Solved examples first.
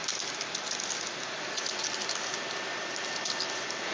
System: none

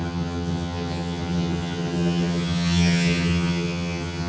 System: vocoder, HiFi-GAN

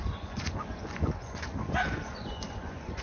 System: vocoder, Vocos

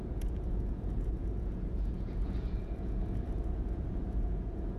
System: vocoder, Vocos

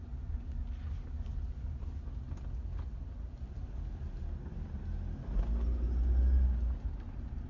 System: none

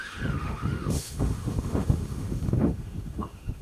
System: autoencoder, DAC-VAE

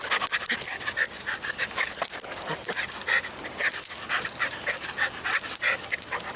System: none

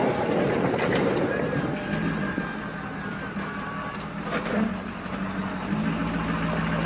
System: none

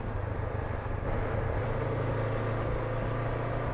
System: none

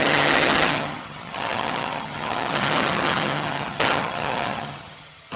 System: vocoder, HiFi-GAN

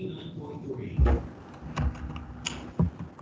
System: none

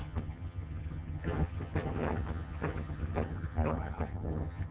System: vocoder, HiFi-GAN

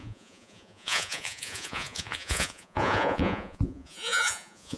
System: vocoder, Vocos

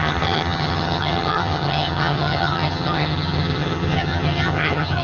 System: vocoder, HiFi-GAN